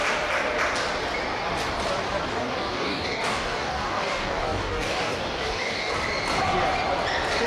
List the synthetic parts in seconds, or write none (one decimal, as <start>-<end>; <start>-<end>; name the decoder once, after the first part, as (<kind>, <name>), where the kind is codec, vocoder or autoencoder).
2.3-5.9 (codec, DAC)